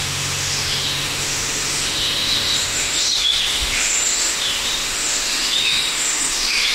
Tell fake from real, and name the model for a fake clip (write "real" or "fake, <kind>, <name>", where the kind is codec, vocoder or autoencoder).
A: fake, autoencoder, DAC-VAE